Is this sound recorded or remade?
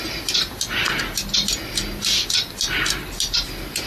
recorded